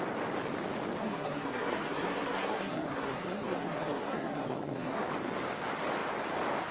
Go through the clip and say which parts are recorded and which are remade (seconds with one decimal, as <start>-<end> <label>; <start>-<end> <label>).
0.0-1.0 recorded; 1.0-5.0 remade; 5.0-6.7 recorded